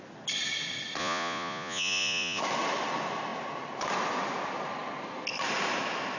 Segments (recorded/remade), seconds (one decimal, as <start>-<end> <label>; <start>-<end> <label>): 0.0-1.0 recorded; 1.0-2.4 remade; 2.4-6.2 recorded